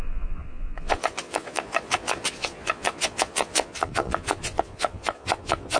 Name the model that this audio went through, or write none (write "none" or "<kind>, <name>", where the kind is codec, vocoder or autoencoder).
vocoder, Vocos